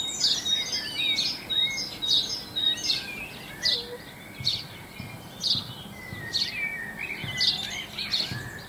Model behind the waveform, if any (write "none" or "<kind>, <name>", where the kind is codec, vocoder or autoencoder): none